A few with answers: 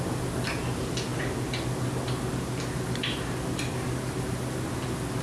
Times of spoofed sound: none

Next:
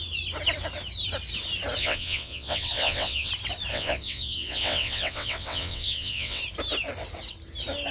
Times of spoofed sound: 1.8-3.3 (vocoder, WaveNeXt); 3.7-6.4

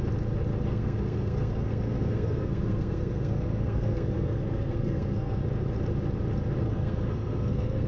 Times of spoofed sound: 0.7-5.4 (codec, SNAC); 6.6-7.9

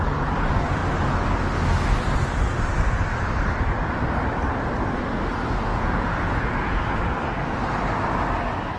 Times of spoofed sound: 5.7-6.8 (vocoder, Vocos)

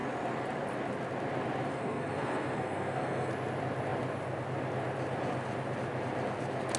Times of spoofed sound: 1.7-3.3 (codec, SNAC)

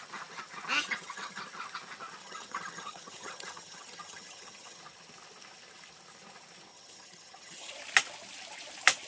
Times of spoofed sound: 0.8-1.4 (vocoder, HiFi-GAN); 2.2-4.8; 6.7-7.7

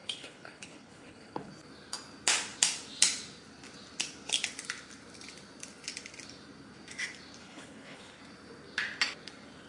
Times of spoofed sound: 0.0-1.5 (codec, HILCodec); 7.4-8.2